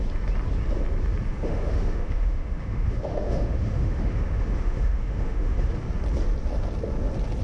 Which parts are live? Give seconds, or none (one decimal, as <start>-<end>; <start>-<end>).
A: 0.0-1.3; 5.7-7.4